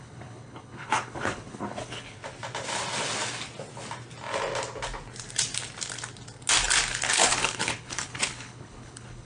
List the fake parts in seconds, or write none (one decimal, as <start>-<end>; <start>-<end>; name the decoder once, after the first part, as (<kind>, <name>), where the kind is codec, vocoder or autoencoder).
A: 0.0-2.2 (codec, HILCodec); 6.9-9.2